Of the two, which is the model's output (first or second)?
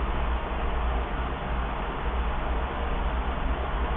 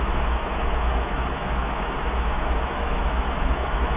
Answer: second